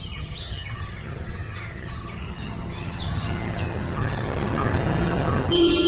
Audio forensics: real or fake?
fake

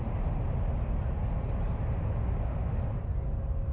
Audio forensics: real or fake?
real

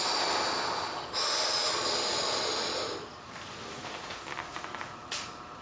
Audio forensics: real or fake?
real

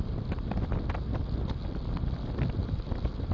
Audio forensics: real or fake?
real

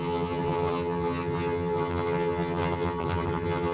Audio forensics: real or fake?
fake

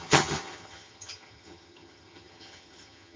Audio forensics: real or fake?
fake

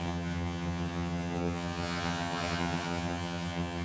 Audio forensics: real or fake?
fake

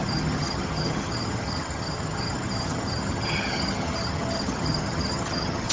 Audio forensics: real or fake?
fake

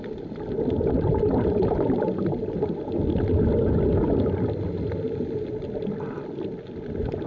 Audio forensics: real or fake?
real